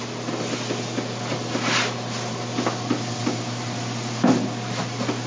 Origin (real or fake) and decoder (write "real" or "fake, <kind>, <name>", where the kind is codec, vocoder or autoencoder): real